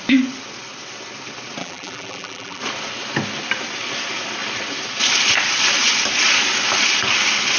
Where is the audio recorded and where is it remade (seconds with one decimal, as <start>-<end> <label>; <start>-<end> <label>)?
0.0-1.6 recorded; 1.6-2.6 remade; 2.6-7.6 recorded